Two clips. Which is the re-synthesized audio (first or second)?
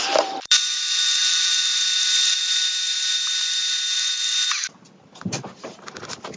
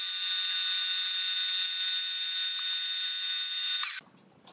first